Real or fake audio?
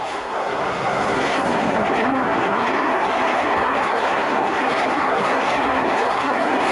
fake